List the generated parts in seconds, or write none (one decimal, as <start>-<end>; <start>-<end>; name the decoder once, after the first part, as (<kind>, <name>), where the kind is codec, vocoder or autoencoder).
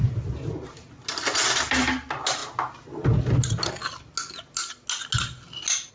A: none